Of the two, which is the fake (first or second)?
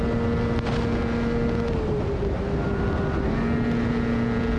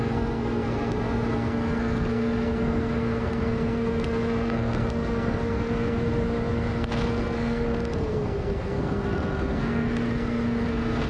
second